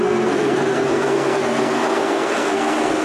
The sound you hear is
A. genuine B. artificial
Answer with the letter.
B